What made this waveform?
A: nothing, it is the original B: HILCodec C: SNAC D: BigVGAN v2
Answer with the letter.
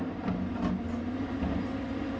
A